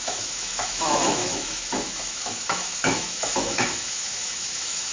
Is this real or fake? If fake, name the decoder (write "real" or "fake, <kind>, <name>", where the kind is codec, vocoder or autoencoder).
fake, autoencoder, DAC-VAE